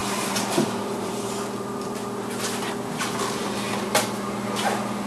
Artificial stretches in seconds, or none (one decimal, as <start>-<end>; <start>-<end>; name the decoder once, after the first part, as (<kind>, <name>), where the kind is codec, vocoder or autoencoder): 0.0-2.0 (vocoder, BigVGAN v2)